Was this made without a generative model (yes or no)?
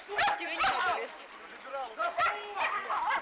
yes